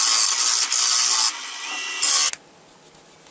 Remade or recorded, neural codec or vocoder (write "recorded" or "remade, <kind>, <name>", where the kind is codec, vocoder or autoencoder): recorded